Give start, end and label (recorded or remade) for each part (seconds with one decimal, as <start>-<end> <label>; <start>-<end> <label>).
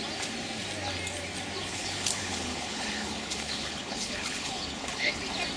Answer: 0.0-1.7 recorded; 1.7-5.1 remade; 5.1-5.6 recorded